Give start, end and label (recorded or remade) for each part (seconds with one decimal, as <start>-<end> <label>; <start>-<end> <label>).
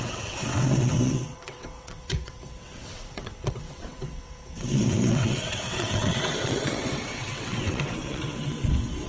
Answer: 0.0-9.1 remade